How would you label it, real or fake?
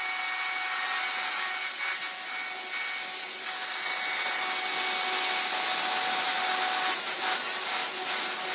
real